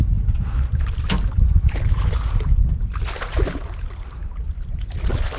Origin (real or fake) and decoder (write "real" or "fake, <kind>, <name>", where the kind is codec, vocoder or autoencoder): real